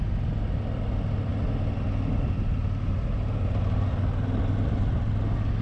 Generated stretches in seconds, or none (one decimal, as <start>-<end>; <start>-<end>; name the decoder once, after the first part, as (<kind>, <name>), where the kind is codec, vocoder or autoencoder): none